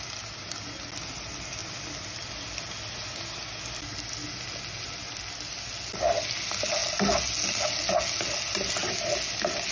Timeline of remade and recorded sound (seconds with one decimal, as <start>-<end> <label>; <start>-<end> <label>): 0.0-9.7 recorded